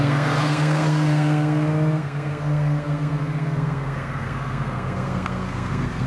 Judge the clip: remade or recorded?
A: remade